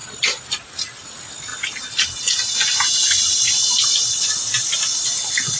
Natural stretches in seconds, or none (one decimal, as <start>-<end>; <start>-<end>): 0.0-5.6